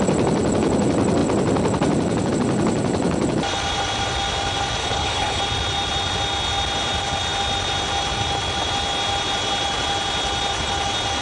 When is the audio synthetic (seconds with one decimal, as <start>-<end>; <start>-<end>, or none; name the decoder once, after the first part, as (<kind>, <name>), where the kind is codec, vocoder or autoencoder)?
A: 4.8-5.4 (codec, HILCodec)